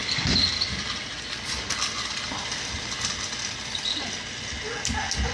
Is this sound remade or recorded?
recorded